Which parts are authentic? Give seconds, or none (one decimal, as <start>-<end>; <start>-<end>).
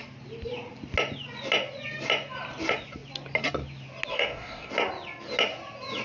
0.0-4.1; 4.7-6.0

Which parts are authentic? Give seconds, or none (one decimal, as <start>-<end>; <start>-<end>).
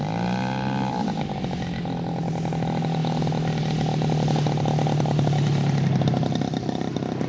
0.0-7.3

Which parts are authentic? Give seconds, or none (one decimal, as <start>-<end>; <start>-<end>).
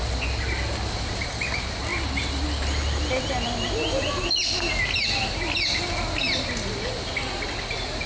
0.0-8.1